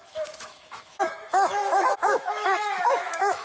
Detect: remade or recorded remade